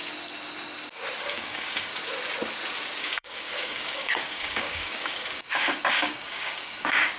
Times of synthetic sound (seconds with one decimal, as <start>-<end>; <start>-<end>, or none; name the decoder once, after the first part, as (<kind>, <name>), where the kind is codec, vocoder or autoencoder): 1.2-1.9 (codec, DAC); 3.0-7.2